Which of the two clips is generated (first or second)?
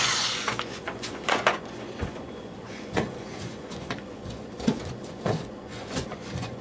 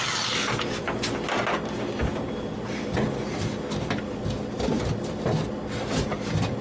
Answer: first